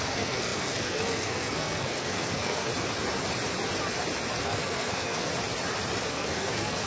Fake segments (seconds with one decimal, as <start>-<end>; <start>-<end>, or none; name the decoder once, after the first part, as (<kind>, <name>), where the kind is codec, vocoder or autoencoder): 0.0-2.7 (codec, SNAC); 4.4-5.3; 6.1-6.9